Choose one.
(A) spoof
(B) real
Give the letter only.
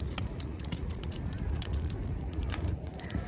A